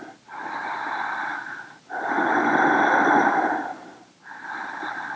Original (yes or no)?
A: yes